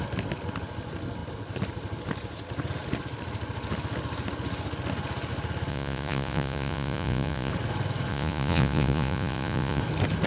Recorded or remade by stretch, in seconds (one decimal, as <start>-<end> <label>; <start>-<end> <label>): 0.0-5.7 recorded; 5.7-7.5 remade; 7.5-8.1 recorded; 8.1-9.8 remade; 9.8-10.3 recorded